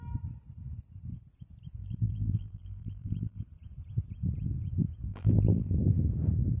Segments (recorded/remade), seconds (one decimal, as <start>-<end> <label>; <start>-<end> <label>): 0.0-1.8 recorded; 1.8-3.4 remade; 3.4-5.1 recorded; 5.1-5.7 remade; 5.7-6.6 recorded